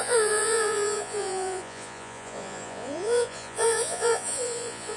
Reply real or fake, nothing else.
fake